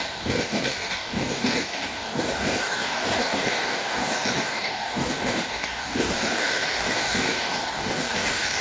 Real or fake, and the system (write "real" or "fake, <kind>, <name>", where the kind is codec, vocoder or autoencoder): fake, codec, DAC